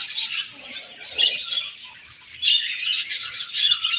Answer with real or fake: real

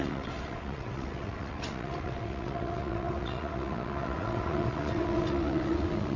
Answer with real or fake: fake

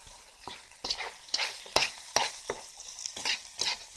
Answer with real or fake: real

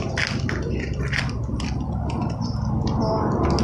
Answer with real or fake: real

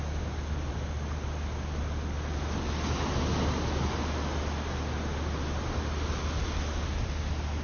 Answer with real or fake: real